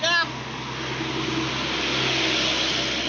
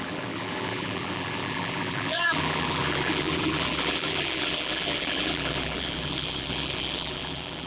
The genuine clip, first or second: first